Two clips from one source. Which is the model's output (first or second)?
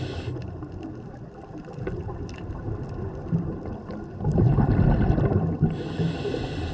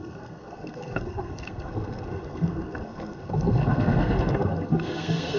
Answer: second